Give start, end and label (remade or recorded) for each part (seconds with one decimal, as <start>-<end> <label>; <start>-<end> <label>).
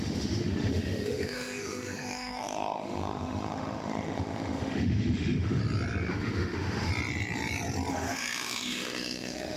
0.0-5.6 remade; 5.6-6.1 recorded; 6.1-6.9 remade; 6.9-7.9 recorded; 7.9-9.6 remade